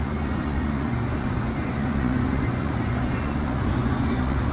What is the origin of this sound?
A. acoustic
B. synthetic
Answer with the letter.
B